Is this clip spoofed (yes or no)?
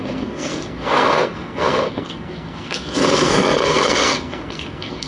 yes